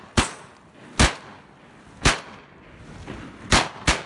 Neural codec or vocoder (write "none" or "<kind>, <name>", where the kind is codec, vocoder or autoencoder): none